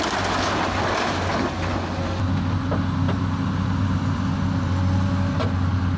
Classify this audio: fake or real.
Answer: real